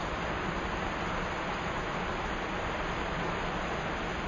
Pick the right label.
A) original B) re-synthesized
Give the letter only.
A